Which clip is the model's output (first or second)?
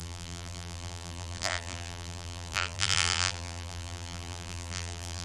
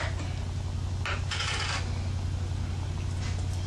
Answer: first